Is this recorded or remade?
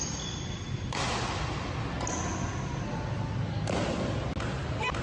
recorded